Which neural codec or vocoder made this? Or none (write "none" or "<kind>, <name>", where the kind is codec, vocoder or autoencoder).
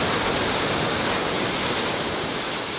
vocoder, BigVGAN v2